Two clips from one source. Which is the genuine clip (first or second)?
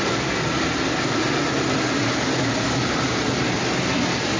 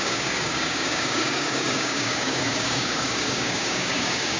first